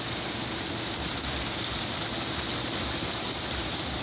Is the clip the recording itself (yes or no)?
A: yes